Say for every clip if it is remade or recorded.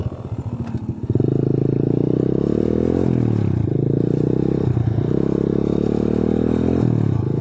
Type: recorded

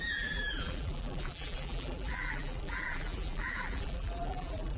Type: remade